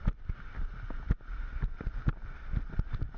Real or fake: real